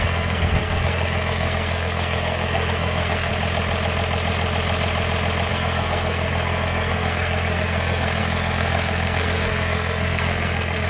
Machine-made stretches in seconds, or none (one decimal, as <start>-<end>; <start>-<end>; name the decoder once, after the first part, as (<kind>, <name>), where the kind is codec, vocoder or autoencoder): 0.0-3.3 (codec, SNAC); 5.5-10.9